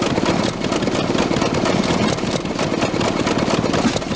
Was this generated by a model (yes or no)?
no